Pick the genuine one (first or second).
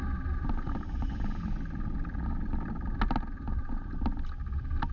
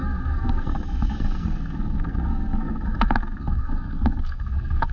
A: first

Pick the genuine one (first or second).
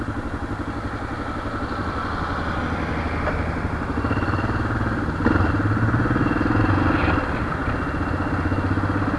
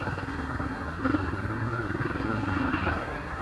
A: first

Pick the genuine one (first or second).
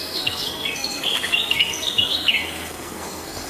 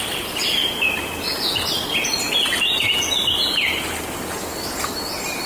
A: second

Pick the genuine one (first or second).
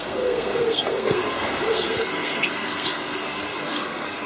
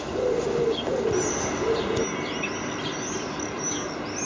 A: second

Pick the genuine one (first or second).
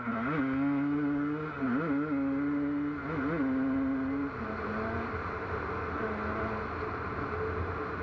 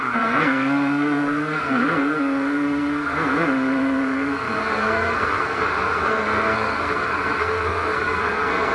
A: first